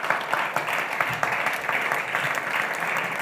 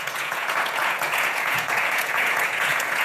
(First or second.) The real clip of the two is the first